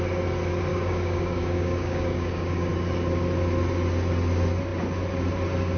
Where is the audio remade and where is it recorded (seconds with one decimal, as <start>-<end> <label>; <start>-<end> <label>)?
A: 0.0-0.7 recorded; 0.7-2.7 remade; 2.7-5.8 recorded